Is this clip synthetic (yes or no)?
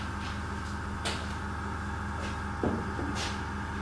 no